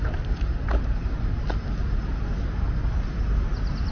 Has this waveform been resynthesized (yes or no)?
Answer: no